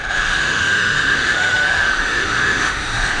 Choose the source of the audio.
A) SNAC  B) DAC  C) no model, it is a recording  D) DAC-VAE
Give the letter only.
D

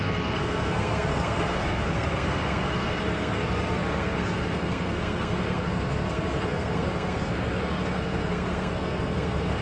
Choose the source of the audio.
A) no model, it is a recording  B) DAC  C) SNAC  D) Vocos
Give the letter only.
C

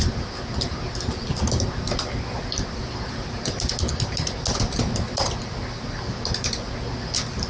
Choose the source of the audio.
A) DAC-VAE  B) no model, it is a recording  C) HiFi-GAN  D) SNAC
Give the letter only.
B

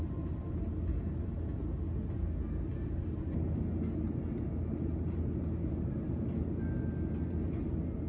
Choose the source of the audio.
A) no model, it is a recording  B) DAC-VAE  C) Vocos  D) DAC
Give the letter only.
A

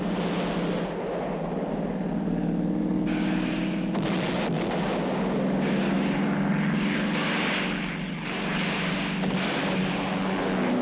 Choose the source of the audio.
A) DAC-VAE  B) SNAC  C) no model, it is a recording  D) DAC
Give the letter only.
C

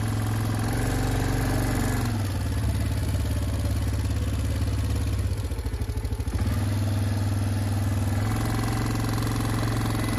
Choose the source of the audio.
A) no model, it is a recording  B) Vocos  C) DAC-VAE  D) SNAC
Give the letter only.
A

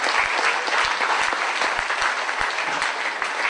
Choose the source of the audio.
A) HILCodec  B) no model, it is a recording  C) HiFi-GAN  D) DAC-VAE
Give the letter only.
B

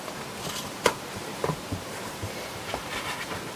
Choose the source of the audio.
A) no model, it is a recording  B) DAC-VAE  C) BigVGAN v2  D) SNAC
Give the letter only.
C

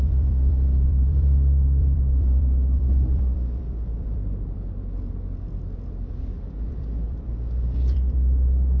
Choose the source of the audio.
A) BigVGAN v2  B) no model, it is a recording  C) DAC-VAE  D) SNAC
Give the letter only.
A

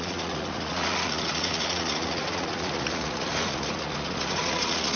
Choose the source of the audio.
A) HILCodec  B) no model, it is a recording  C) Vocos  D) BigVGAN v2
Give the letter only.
C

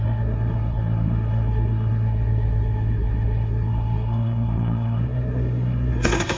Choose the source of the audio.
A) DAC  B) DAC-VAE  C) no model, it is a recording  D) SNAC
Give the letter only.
D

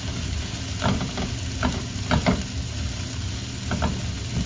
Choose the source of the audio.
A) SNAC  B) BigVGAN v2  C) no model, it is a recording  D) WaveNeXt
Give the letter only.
C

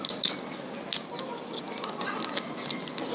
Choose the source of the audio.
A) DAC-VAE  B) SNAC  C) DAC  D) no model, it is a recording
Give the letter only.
D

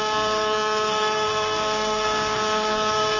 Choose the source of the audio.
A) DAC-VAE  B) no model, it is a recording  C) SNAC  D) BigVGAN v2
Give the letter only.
C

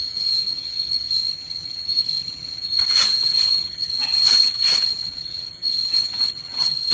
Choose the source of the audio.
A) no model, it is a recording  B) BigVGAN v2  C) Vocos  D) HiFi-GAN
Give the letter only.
D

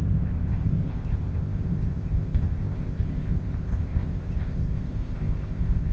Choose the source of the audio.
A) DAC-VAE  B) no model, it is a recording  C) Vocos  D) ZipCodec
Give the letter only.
D